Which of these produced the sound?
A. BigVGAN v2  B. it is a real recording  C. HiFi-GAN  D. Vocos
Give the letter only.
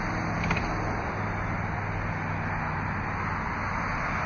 B